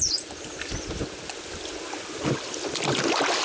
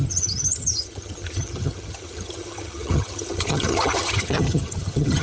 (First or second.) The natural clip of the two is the first